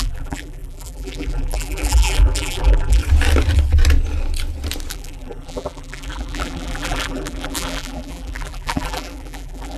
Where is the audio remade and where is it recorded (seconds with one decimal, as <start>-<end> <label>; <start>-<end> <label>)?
0.0-3.0 remade; 3.0-4.9 recorded; 4.9-9.8 remade